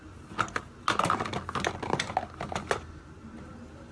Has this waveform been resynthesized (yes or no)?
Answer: no